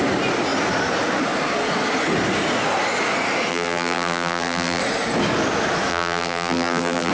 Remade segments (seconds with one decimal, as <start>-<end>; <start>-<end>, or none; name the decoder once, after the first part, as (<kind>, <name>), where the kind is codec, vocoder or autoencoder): 3.5-4.8 (vocoder, BigVGAN v2); 5.9-7.1